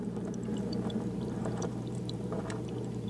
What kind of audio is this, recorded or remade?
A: remade